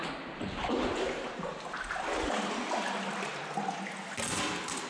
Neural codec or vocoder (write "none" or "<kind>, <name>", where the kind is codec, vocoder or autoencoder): none